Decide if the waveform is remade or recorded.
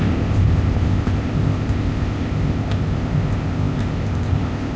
remade